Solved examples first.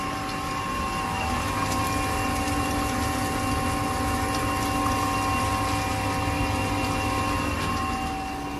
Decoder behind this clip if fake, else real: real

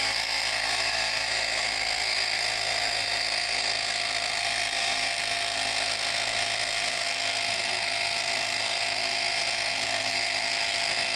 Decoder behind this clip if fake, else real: fake, codec, SNAC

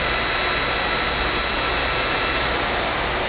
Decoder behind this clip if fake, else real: real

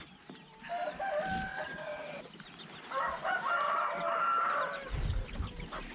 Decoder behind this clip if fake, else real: real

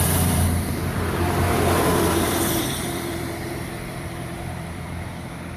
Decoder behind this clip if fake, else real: fake, vocoder, BigVGAN v2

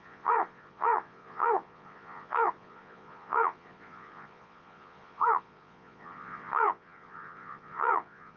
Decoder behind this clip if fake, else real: fake, vocoder, Vocos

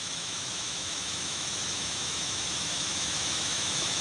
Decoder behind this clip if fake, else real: fake, autoencoder, DAC-VAE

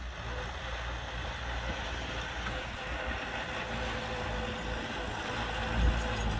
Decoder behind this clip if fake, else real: real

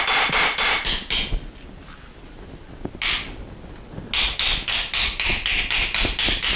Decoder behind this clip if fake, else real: real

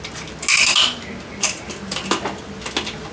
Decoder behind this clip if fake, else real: real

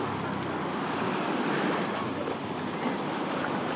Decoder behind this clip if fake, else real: real